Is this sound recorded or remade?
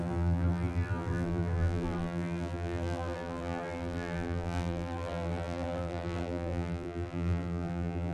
remade